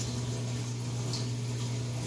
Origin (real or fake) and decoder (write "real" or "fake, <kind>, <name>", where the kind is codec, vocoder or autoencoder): real